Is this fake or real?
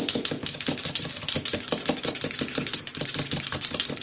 real